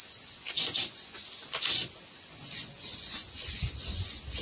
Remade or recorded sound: remade